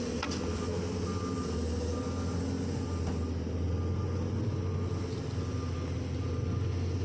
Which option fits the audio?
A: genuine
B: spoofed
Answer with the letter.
A